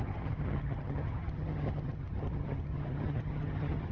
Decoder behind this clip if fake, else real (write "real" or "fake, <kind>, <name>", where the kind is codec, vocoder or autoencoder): fake, vocoder, HiFi-GAN